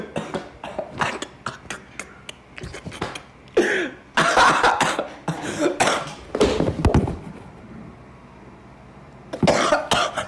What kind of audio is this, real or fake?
real